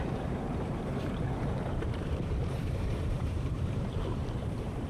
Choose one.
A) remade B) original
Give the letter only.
A